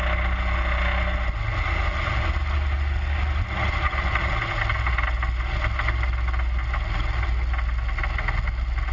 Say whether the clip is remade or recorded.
recorded